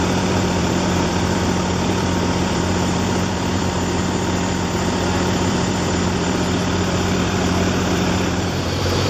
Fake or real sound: fake